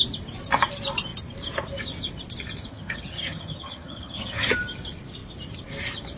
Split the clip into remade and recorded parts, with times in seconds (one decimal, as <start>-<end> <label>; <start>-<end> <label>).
0.0-2.7 recorded; 2.7-4.5 remade; 4.5-6.2 recorded